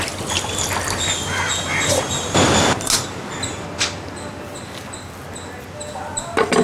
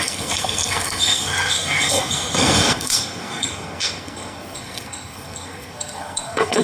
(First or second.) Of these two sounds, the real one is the first